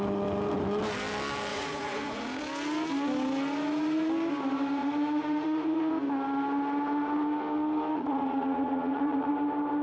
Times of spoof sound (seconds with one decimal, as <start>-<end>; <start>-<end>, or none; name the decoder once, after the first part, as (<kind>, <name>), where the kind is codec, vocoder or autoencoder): 1.5-2.4 (vocoder, Vocos); 4.8-5.9; 7.9-9.3